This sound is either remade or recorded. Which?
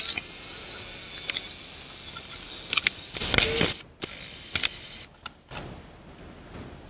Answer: recorded